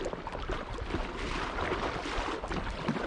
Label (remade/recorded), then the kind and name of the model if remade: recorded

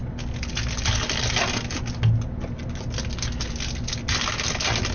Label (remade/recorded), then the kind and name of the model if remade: recorded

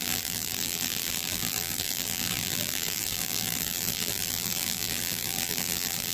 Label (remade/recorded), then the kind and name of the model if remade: remade, vocoder, BigVGAN v2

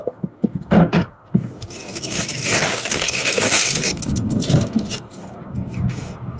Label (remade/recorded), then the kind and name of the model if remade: remade, codec, DAC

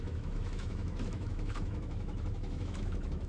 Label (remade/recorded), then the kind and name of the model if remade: remade, autoencoder, DAC-VAE